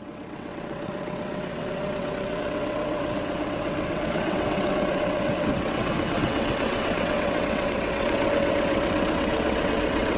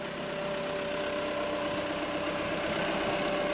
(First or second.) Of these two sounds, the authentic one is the second